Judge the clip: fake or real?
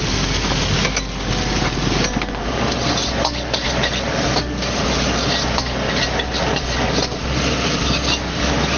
real